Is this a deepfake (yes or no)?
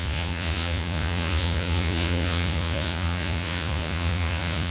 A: yes